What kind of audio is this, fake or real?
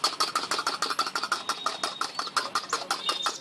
real